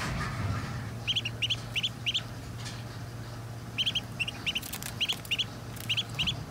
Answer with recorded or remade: recorded